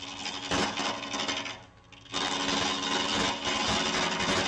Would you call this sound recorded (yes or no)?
yes